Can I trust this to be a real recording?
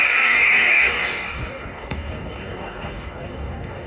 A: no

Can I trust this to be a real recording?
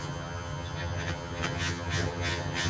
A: no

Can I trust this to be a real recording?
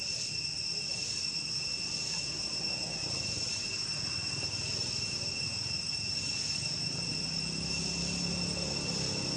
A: yes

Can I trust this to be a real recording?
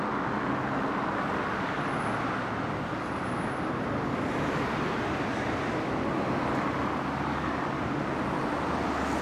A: yes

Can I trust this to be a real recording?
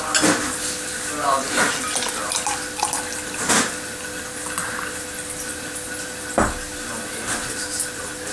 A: yes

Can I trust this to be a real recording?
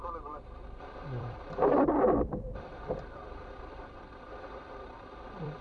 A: no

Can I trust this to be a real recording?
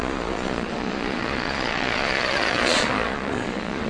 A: no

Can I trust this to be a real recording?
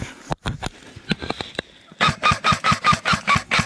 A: yes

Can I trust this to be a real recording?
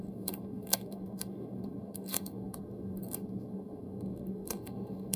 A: no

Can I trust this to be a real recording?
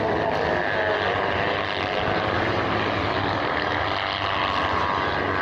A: yes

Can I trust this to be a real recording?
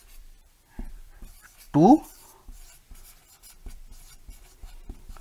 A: no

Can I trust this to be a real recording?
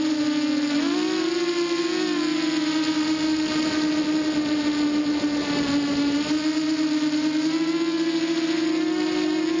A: yes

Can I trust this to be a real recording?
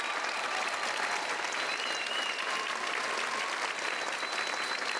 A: yes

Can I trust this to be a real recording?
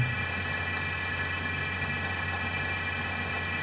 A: no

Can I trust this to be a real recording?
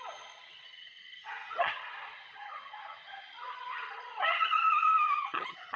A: no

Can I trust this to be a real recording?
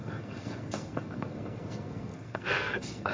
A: no